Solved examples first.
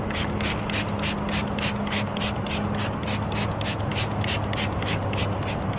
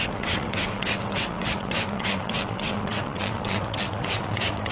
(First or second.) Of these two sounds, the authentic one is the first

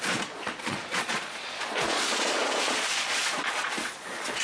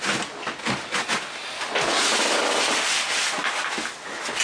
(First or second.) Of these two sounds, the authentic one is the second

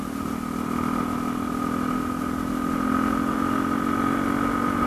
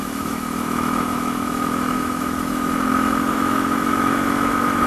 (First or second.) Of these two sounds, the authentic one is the first